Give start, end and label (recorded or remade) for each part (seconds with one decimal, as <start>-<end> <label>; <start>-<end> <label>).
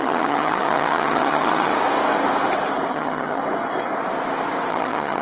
0.0-1.7 remade; 1.7-2.9 recorded; 2.9-3.4 remade; 3.4-4.7 recorded; 4.7-5.2 remade